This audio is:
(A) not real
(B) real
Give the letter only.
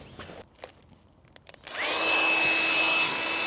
B